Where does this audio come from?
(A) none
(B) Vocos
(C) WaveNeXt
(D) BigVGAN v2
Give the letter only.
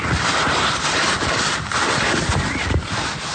A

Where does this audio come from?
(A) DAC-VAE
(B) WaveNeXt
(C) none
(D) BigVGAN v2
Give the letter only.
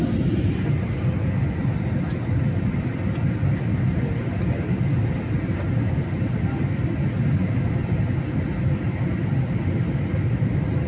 C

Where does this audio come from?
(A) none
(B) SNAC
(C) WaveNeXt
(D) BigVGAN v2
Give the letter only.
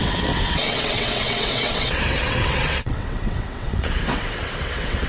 C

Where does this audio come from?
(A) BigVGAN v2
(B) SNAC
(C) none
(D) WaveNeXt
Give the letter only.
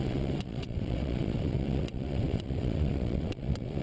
D